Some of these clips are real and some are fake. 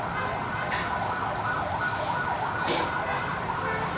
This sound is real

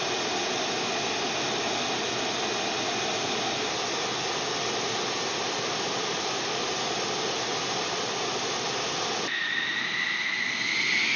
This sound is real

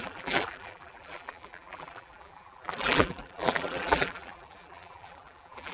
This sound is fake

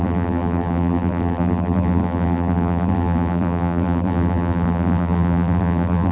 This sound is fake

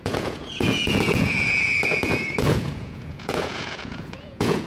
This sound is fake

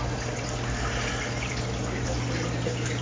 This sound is real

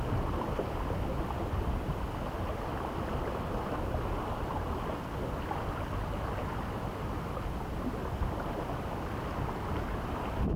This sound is real